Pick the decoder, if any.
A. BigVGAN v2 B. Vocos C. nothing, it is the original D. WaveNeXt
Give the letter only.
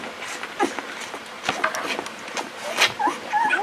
C